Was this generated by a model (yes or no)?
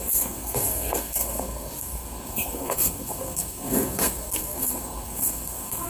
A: yes